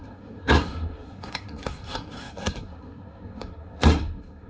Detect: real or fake fake